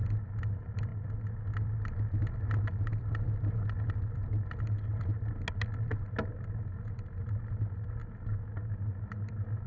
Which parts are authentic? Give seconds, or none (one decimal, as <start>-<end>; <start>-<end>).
0.0-9.7